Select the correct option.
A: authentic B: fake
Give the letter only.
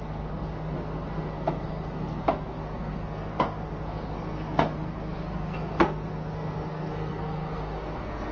B